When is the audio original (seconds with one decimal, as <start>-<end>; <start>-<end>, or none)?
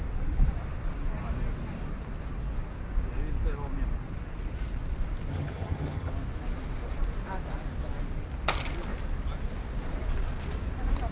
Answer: 0.0-5.3; 6.1-11.1